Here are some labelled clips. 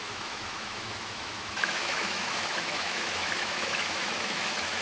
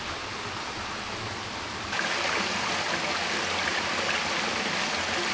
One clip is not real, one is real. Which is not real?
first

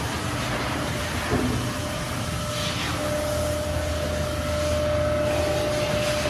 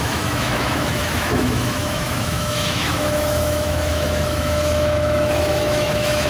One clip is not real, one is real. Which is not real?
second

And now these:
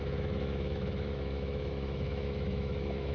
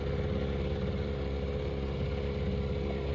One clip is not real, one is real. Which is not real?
first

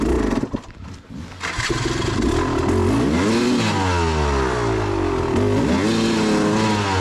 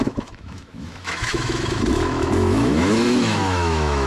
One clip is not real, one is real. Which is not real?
second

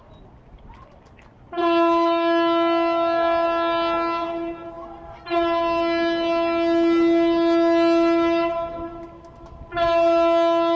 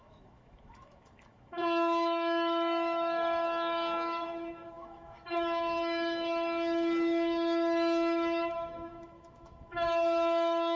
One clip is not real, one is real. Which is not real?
second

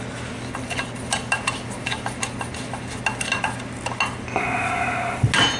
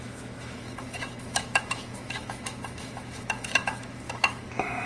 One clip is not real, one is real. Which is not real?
second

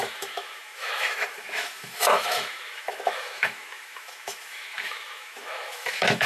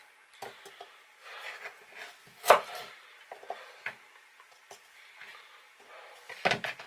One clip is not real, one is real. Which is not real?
first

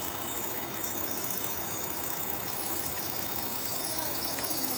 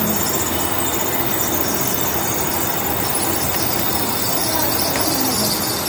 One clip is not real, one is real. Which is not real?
first